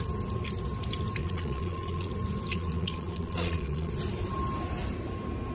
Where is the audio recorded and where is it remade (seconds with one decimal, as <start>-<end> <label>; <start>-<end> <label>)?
0.0-1.2 recorded; 1.2-2.1 remade; 2.1-2.5 recorded; 2.5-3.9 remade; 3.9-5.5 recorded